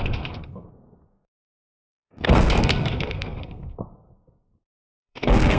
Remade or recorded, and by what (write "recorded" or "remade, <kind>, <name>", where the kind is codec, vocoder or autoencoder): remade, codec, SNAC